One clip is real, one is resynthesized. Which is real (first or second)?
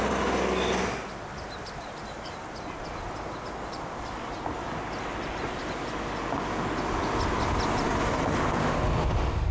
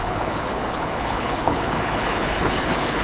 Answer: first